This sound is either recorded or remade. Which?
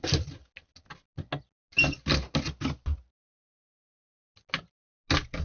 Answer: recorded